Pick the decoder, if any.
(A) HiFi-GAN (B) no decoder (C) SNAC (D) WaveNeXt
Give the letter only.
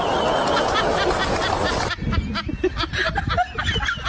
B